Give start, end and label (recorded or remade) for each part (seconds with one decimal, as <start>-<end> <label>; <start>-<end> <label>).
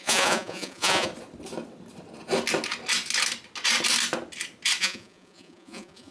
0.0-1.1 remade; 1.1-4.8 recorded; 4.8-6.1 remade